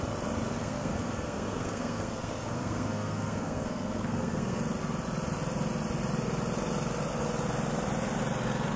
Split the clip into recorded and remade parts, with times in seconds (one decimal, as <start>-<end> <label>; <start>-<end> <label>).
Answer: 0.0-0.6 recorded; 0.6-4.6 remade; 4.6-8.8 recorded